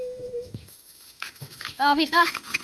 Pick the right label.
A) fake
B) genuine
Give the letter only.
A